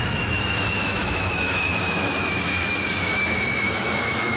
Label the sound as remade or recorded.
remade